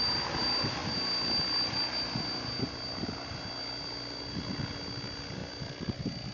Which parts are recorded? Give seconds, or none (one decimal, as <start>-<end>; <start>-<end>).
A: 0.0-6.3